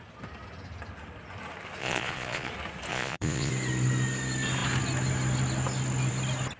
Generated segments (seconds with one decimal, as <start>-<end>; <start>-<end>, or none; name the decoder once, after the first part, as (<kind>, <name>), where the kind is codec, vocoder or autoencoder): 1.8-2.5 (vocoder, Vocos); 2.9-3.5